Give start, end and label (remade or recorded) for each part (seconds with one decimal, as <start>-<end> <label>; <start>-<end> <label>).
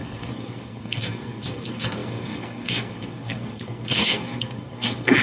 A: 0.0-5.2 remade